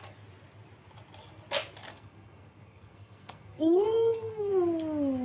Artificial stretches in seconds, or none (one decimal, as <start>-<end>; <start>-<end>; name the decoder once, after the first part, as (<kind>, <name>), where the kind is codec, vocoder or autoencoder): 1.9-4.5 (codec, SNAC)